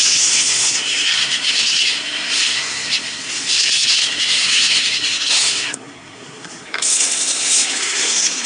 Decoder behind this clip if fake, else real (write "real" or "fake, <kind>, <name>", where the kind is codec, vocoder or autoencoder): fake, codec, SNAC